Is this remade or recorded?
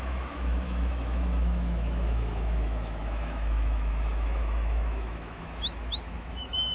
remade